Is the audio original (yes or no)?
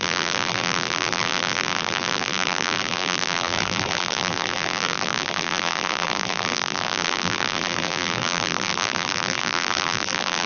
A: no